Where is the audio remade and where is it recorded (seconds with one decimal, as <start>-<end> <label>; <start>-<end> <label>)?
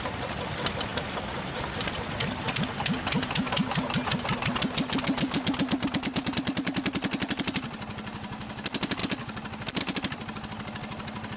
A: 0.0-11.4 recorded